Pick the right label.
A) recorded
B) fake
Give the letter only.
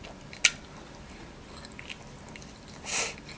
A